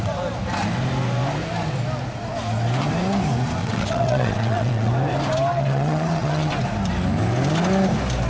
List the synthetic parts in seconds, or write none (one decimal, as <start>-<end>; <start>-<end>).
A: 3.6-4.9; 5.5-6.5